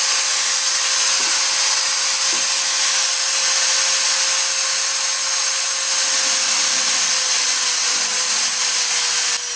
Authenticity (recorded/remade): recorded